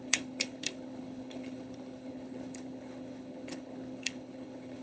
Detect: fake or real fake